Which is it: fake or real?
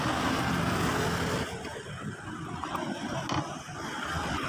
real